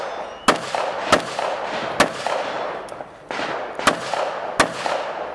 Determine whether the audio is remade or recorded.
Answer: recorded